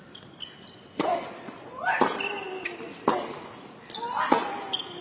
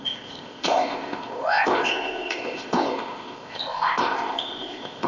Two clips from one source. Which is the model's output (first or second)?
second